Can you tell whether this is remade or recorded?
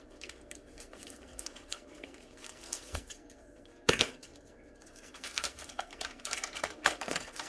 remade